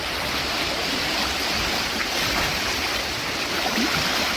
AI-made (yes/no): no